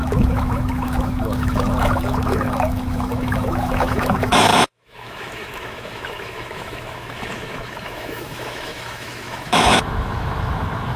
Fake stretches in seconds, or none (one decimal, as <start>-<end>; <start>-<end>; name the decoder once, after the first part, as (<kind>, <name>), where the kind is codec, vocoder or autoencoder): 0.0-11.0 (autoencoder, DAC-VAE)